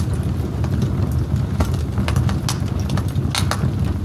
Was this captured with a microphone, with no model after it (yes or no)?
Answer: yes